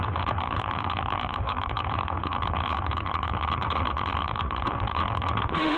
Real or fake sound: fake